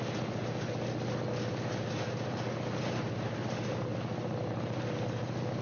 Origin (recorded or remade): recorded